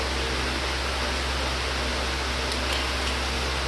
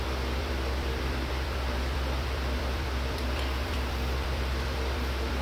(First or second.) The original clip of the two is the first